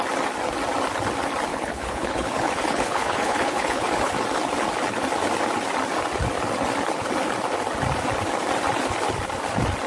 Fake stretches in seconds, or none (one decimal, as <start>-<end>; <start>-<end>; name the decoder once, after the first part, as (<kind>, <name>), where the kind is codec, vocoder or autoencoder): 1.5-4.1 (codec, HILCodec)